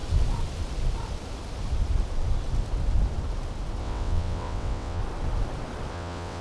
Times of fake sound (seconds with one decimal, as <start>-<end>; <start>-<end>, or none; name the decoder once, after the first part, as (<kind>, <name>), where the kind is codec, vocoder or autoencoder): 3.8-5.0 (vocoder, WaveNeXt); 5.9-6.4